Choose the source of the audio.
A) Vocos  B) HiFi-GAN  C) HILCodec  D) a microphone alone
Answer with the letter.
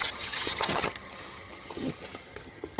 B